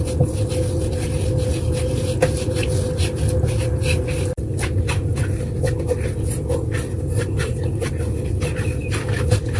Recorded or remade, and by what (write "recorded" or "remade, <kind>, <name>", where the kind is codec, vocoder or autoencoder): recorded